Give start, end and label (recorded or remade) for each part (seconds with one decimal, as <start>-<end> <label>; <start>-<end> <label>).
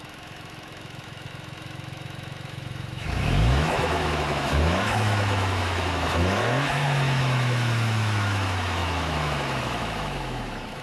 0.0-10.8 remade